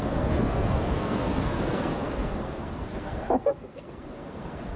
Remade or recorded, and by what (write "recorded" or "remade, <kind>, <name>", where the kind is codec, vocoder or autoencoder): remade, codec, SNAC